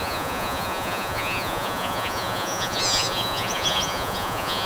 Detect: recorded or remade remade